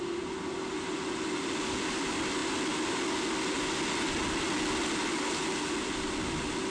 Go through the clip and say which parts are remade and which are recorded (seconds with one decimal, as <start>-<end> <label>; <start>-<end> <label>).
0.0-6.7 recorded